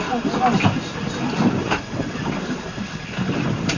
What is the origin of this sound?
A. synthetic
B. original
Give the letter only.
B